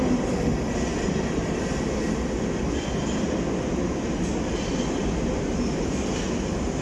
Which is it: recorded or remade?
recorded